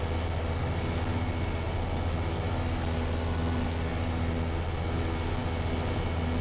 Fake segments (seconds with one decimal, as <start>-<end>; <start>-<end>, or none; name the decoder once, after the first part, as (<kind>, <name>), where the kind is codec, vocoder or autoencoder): none